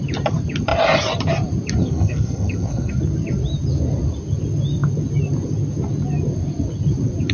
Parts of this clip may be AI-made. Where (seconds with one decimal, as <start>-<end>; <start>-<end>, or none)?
1.8-2.9